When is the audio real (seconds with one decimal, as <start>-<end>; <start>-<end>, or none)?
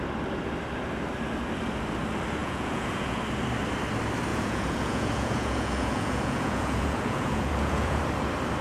0.0-2.4; 3.2-4.3; 8.0-8.6